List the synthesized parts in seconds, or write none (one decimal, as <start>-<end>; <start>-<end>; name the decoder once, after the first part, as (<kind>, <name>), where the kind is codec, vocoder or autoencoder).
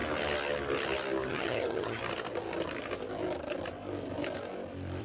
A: 1.3-2.0 (vocoder, HiFi-GAN)